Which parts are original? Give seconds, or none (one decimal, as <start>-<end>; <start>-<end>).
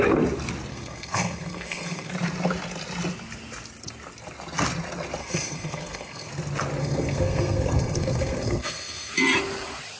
0.0-0.7; 2.1-5.2; 6.3-6.8; 9.1-10.0